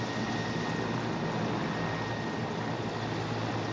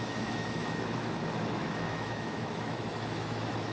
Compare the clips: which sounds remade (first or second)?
second